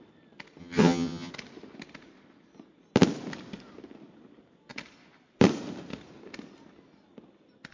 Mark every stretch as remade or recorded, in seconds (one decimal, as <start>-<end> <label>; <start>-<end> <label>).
0.0-0.6 recorded; 0.6-1.3 remade; 1.3-7.7 recorded

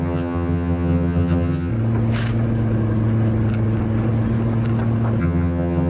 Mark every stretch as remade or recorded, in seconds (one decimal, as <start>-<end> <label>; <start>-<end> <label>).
0.0-1.7 remade; 1.7-5.2 recorded; 5.2-5.9 remade

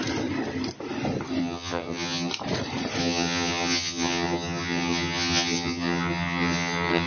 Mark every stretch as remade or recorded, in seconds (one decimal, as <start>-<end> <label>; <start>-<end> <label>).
0.0-1.4 recorded; 1.4-2.3 remade; 2.3-3.0 recorded; 3.0-7.1 remade